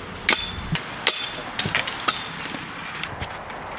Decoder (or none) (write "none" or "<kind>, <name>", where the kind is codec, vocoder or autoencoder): none